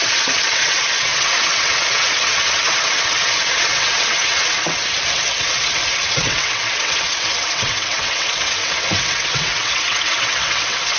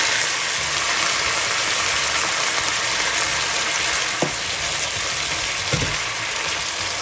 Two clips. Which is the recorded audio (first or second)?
second